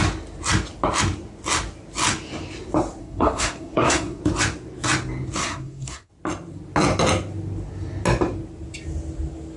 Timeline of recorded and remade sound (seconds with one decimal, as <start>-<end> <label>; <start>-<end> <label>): 0.0-3.0 recorded; 3.0-4.2 remade; 4.2-5.4 recorded; 5.4-6.1 remade; 6.1-9.6 recorded